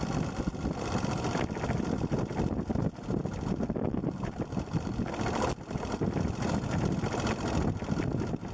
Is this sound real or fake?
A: real